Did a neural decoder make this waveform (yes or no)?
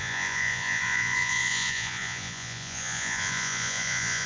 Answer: yes